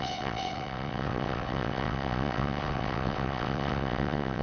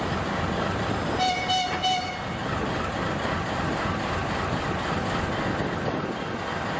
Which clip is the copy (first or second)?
first